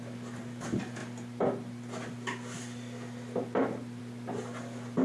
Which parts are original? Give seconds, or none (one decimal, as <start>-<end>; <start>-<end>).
0.0-5.0